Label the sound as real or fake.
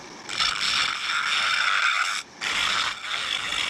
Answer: real